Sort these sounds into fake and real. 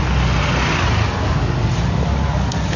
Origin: real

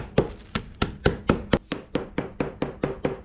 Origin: real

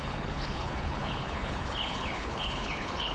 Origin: fake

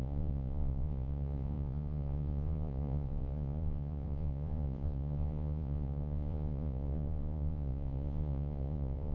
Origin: fake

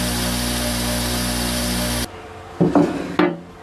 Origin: real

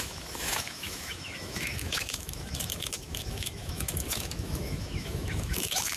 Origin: fake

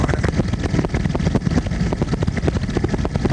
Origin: real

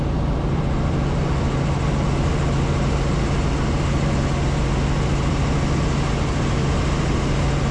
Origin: real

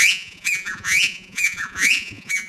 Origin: fake